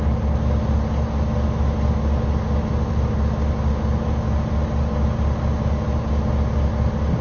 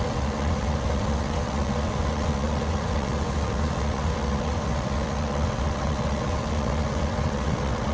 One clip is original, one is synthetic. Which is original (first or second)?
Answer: first